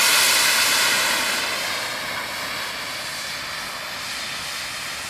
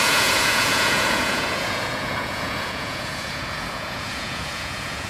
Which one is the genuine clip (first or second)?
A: first